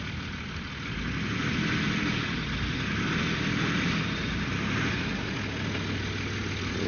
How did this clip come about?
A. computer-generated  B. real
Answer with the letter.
B